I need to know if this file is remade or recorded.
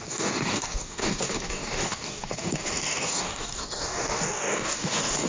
remade